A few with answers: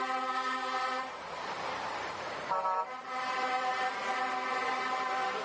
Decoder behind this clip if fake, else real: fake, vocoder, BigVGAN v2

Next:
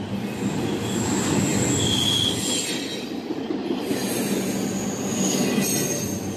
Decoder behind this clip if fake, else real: real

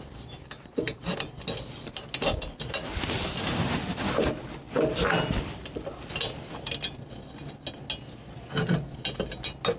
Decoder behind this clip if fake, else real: real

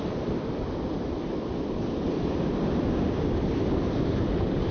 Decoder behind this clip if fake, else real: fake, vocoder, BigVGAN v2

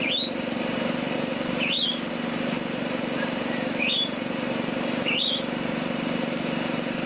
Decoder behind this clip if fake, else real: fake, vocoder, BigVGAN v2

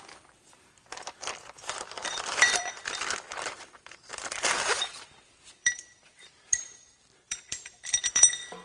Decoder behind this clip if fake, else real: fake, vocoder, BigVGAN v2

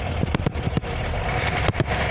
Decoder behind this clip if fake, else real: fake, vocoder, BigVGAN v2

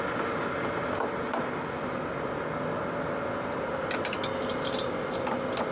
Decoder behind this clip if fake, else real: real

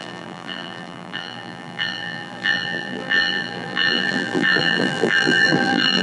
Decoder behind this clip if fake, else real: fake, vocoder, BigVGAN v2